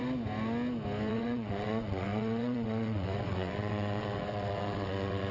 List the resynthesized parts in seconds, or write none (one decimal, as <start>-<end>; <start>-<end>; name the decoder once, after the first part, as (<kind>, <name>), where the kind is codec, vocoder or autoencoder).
1.1-5.3 (vocoder, WaveNeXt)